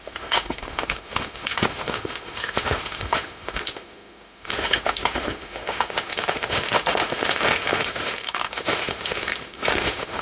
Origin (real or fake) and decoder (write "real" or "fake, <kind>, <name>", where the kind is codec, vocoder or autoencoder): fake, autoencoder, DAC-VAE